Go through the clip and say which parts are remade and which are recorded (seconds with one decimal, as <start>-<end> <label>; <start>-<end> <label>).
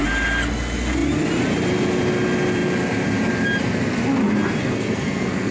0.0-4.6 recorded; 4.6-5.5 remade